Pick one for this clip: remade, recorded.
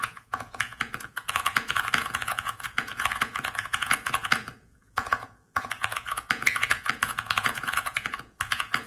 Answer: remade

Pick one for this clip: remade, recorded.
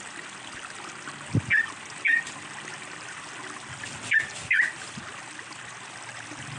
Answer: recorded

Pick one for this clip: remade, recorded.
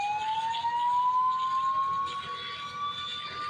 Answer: recorded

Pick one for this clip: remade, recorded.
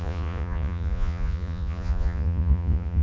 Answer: remade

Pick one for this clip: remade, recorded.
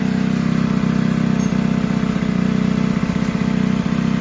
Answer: recorded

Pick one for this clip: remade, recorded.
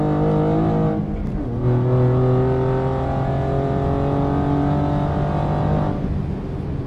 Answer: recorded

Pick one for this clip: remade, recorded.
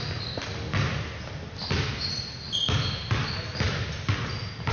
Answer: recorded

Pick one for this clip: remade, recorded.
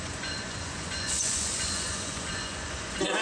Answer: remade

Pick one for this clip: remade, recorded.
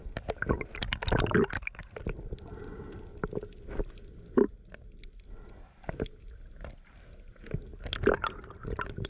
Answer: recorded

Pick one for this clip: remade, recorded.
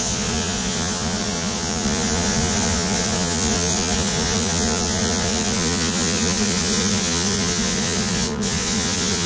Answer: remade